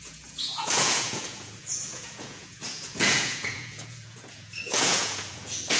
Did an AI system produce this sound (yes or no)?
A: yes